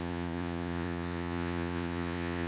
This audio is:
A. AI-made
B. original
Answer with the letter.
A